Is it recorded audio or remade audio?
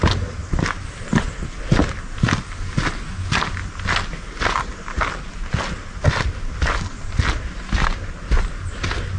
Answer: recorded